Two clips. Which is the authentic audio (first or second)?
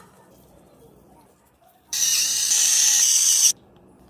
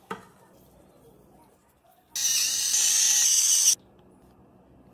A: second